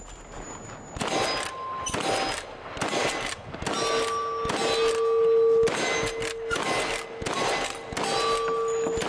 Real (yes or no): yes